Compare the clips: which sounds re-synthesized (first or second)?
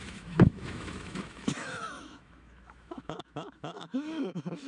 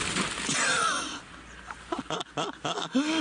first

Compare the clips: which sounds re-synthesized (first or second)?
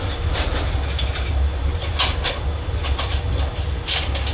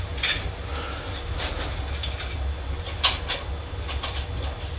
first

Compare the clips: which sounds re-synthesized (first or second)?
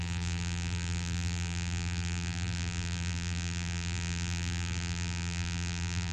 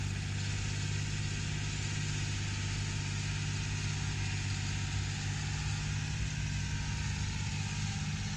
first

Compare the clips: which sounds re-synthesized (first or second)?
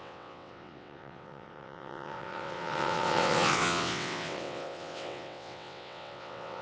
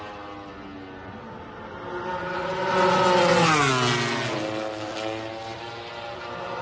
first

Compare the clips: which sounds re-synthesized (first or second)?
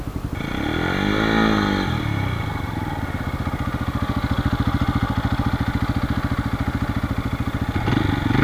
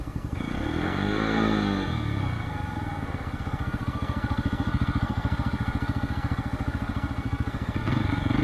second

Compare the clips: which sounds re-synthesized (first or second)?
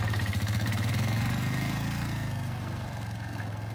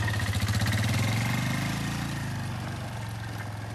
first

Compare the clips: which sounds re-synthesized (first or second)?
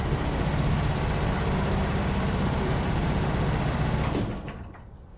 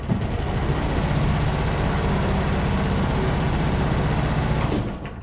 first